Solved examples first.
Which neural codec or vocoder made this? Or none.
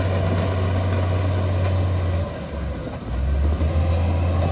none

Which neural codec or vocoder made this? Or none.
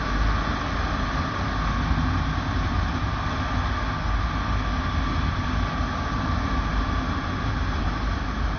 none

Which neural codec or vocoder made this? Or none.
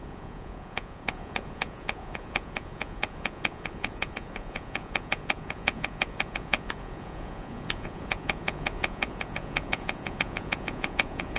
vocoder, Vocos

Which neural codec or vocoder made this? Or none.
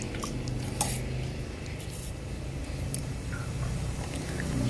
none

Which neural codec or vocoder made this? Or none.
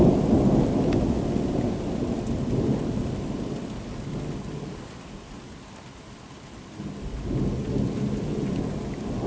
none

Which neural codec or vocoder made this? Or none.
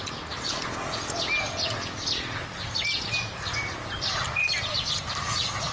none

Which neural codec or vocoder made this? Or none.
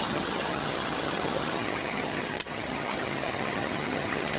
vocoder, HiFi-GAN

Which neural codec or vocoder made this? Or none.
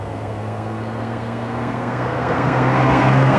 codec, SNAC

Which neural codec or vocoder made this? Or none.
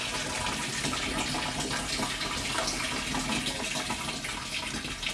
none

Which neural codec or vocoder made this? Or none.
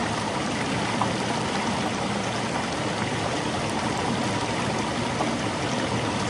none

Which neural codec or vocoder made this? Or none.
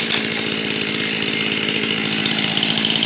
vocoder, BigVGAN v2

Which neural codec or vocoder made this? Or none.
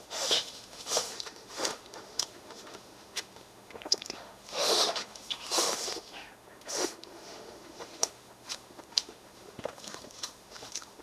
autoencoder, DAC-VAE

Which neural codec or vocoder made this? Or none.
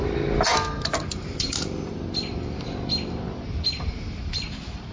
none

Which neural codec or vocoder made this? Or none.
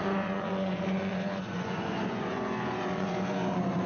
vocoder, Vocos